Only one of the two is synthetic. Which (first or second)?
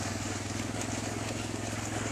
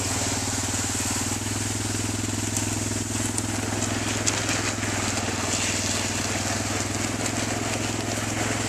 first